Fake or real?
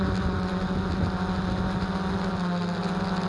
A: real